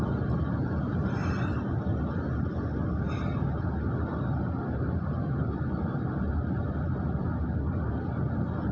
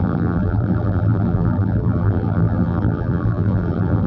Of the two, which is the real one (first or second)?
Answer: first